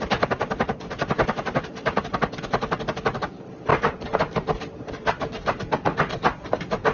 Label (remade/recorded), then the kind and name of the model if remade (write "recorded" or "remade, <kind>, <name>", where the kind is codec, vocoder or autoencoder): remade, vocoder, BigVGAN v2